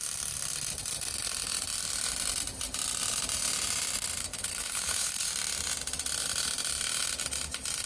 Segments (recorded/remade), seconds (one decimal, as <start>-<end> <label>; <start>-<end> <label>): 0.0-4.2 recorded; 4.2-5.3 remade; 5.3-7.9 recorded